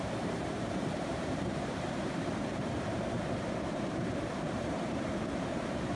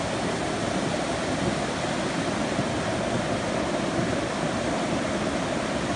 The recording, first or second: second